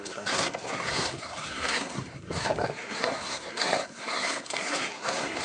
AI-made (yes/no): yes